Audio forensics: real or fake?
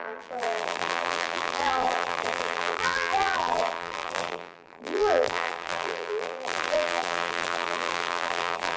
fake